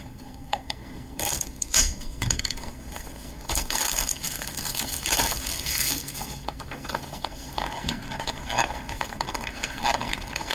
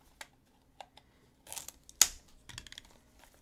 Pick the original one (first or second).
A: second